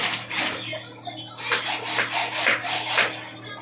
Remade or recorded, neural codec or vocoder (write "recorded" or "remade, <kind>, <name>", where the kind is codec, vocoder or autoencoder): recorded